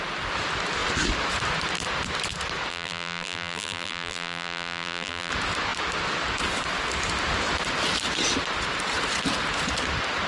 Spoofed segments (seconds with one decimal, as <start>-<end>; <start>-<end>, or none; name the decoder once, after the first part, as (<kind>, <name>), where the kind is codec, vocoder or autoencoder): 2.7-5.3 (vocoder, BigVGAN v2)